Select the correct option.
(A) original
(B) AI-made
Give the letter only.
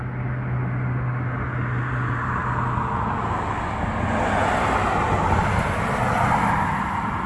A